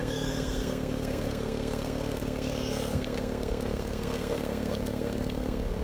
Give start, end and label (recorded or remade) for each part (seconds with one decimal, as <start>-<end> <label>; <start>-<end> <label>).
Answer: 0.0-5.8 remade